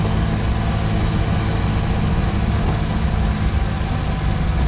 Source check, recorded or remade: recorded